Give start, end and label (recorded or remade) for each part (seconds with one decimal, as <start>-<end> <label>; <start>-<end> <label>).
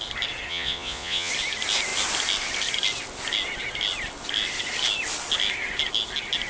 0.0-0.5 recorded; 0.5-1.3 remade; 1.3-6.5 recorded